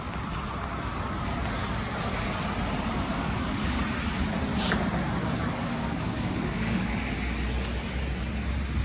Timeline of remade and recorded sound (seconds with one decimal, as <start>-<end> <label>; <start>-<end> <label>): 0.0-3.1 recorded; 3.1-3.8 remade; 3.8-5.2 recorded; 5.2-6.9 remade; 6.9-8.8 recorded